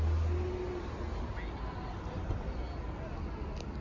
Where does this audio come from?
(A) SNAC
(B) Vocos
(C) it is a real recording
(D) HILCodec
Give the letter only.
C